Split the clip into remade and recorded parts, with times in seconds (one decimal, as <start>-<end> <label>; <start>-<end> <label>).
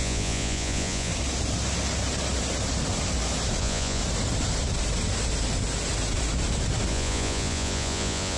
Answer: 0.0-1.1 remade; 1.1-3.6 recorded; 3.6-4.0 remade; 4.0-6.9 recorded; 6.9-8.4 remade